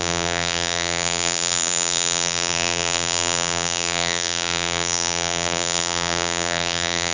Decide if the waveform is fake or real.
fake